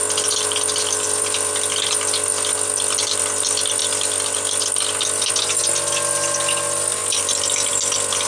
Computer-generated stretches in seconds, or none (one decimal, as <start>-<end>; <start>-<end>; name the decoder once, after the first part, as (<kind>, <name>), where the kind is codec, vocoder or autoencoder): none